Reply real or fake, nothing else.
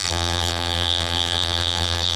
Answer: fake